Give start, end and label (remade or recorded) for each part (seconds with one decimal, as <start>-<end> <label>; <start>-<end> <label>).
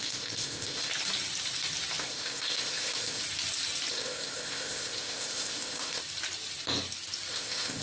0.0-0.9 remade; 0.9-2.0 recorded; 2.0-3.2 remade; 3.2-3.9 recorded; 3.9-6.0 remade; 6.0-7.3 recorded; 7.3-7.8 remade